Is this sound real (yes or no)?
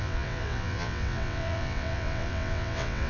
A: no